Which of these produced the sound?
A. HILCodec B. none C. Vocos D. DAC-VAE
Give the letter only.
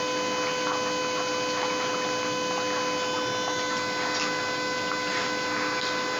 B